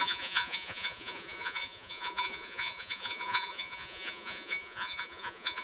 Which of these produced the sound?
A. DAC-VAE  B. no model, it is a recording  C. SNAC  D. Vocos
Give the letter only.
D